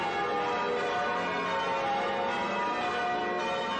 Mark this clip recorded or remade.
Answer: recorded